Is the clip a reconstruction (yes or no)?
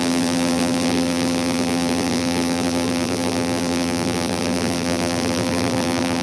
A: yes